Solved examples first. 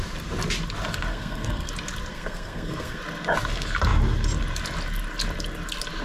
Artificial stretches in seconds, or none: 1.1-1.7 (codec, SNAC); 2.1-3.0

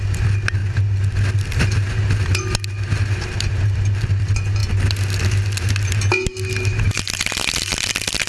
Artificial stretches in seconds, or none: none

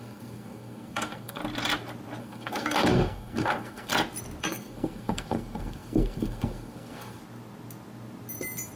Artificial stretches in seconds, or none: 0.0-1.4 (codec, SNAC); 2.2-3.9; 4.4-7.2

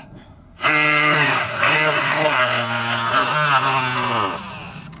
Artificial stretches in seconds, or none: 0.0-2.4 (codec, SNAC)